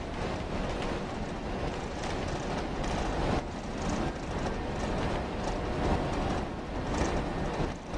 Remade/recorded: recorded